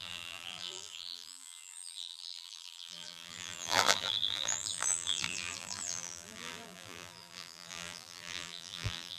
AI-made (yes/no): yes